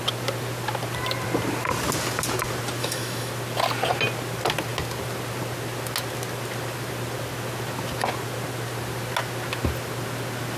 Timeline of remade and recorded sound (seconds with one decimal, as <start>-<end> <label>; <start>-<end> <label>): 0.0-2.8 recorded; 2.8-3.3 remade; 3.3-10.6 recorded